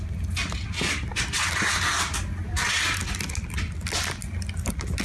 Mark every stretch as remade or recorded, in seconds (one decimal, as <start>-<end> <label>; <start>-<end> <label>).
0.0-5.0 recorded